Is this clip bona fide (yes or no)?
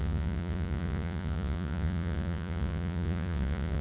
no